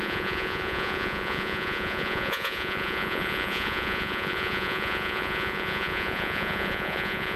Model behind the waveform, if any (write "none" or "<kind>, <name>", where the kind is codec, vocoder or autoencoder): vocoder, Vocos